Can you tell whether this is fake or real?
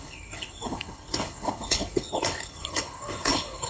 fake